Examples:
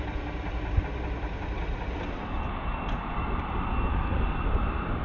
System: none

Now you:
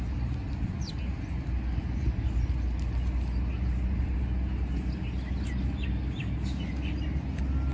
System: none